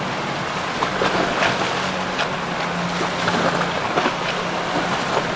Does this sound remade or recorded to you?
recorded